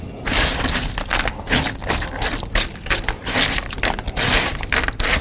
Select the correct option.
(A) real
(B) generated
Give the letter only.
A